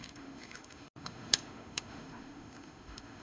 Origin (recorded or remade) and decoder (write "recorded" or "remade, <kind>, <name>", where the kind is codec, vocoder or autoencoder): remade, autoencoder, DAC-VAE